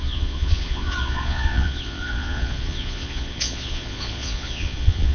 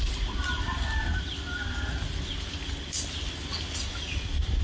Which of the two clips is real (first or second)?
second